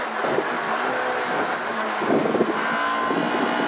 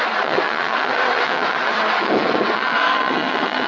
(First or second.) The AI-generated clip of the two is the second